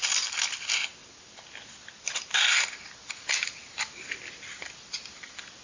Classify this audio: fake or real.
real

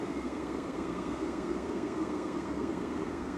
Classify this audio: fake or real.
fake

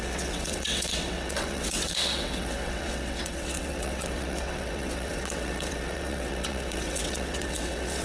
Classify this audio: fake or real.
fake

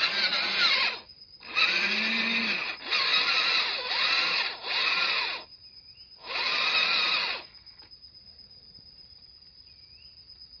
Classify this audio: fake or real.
real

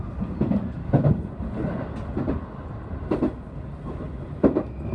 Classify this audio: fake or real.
real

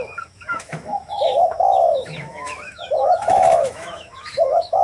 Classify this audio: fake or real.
fake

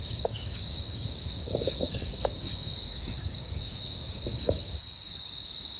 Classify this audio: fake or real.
fake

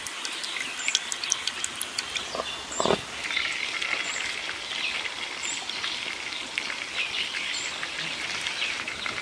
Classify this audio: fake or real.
real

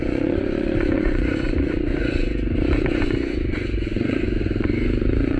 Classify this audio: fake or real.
fake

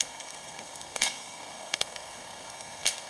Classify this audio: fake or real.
fake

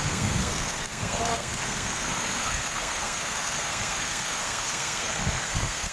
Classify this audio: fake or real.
fake